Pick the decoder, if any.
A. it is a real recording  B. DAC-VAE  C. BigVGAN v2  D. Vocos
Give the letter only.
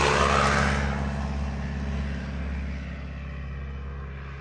A